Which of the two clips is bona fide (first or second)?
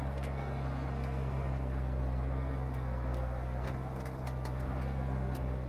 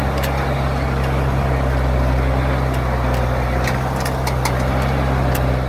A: second